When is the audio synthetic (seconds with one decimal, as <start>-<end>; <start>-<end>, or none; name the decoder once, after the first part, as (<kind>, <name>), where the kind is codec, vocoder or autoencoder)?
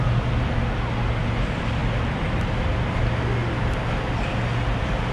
none